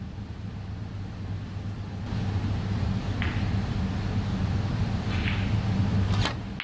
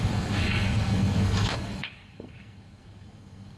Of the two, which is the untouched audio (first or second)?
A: first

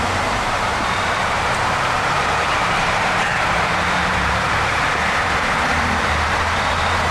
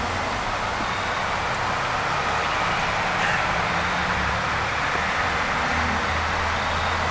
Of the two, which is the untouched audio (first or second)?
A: second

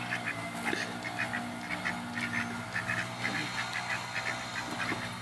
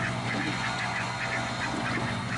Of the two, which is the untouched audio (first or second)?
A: first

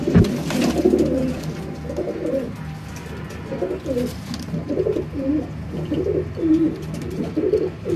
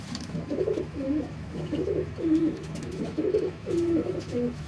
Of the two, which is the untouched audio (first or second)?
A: first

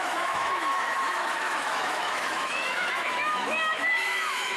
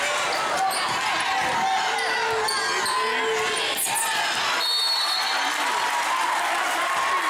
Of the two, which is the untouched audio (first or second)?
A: second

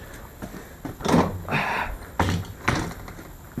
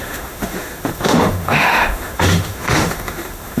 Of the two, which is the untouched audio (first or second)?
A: first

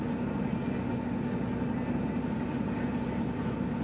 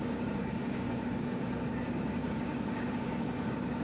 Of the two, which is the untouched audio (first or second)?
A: first